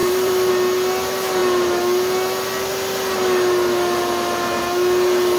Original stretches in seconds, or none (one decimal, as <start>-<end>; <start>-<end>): 0.5-5.4